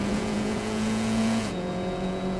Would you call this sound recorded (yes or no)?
no